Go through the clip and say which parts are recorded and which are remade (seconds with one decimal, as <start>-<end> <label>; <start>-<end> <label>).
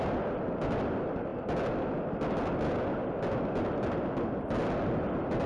0.0-5.5 recorded